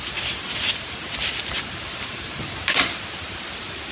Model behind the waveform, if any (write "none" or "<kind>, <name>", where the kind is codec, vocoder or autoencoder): none